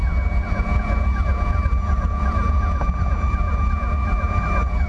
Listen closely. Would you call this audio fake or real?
fake